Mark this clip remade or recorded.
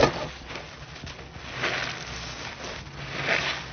recorded